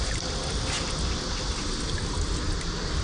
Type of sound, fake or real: real